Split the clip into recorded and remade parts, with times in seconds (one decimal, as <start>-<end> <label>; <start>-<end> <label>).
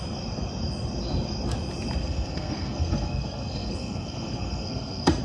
0.0-2.0 recorded; 2.0-5.2 remade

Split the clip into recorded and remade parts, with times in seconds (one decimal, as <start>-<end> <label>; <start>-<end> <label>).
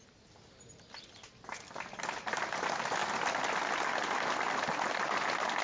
0.0-5.6 recorded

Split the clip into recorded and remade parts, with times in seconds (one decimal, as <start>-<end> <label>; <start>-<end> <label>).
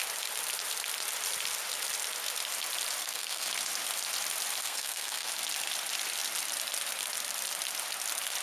0.0-3.0 recorded; 3.0-3.5 remade; 3.5-4.6 recorded; 4.6-5.3 remade; 5.3-8.4 recorded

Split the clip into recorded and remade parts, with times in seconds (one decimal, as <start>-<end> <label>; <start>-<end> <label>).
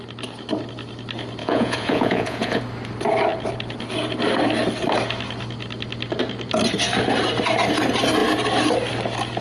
0.0-1.4 recorded; 1.4-2.6 remade; 2.6-9.4 recorded